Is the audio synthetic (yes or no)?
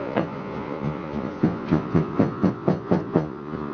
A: yes